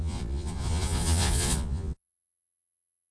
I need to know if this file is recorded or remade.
remade